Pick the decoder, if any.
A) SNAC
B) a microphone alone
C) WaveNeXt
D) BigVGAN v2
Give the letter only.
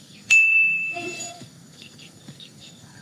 A